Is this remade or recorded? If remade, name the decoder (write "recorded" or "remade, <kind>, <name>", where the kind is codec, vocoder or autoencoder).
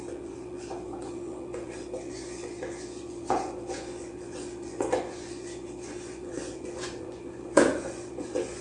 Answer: remade, vocoder, Vocos